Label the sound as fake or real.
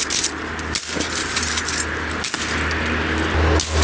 real